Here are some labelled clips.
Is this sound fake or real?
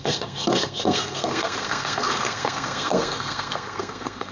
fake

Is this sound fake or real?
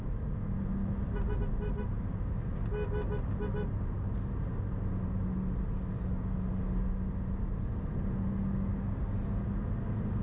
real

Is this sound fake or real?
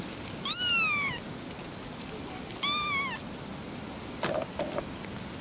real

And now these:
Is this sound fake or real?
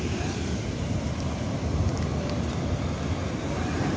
real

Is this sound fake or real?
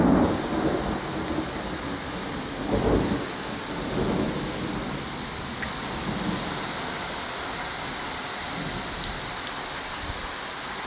real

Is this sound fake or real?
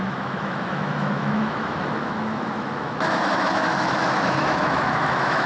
fake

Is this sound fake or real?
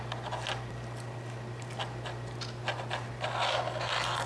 real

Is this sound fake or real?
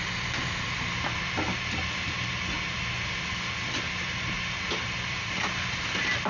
real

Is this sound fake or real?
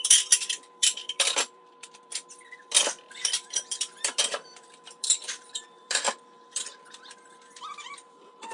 fake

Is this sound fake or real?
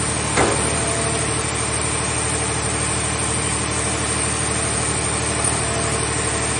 real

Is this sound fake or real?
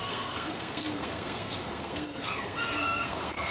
fake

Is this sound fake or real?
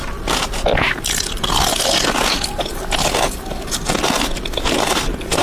real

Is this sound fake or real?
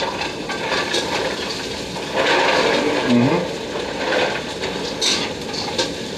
real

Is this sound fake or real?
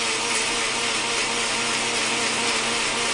real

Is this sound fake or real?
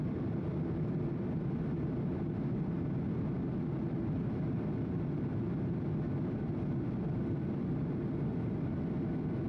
real